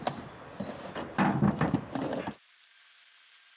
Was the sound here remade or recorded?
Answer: recorded